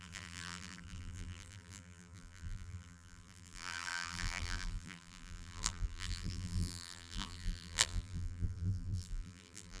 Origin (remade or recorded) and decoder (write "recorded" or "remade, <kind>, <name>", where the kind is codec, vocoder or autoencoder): remade, vocoder, BigVGAN v2